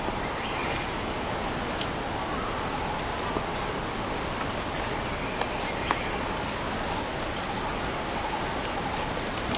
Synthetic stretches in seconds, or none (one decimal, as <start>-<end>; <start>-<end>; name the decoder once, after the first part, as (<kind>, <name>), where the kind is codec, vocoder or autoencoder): 2.4-6.3 (vocoder, BigVGAN v2)